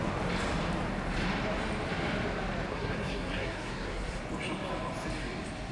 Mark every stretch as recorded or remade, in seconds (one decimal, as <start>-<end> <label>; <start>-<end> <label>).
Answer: 0.0-2.7 recorded; 2.7-4.2 remade; 4.2-5.7 recorded